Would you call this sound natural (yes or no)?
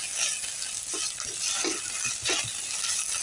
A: yes